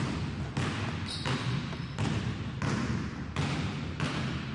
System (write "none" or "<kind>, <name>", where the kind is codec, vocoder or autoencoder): none